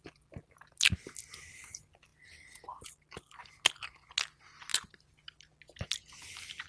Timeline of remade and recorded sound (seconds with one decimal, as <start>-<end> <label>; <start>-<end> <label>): 0.0-4.7 recorded; 4.7-5.5 remade; 5.5-6.7 recorded